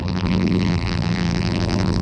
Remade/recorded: remade